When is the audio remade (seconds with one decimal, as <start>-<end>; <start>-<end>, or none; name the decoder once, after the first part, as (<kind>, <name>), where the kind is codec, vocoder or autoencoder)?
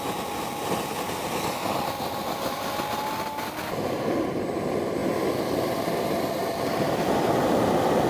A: none